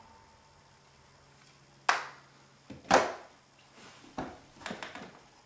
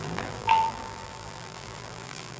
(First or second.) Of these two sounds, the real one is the first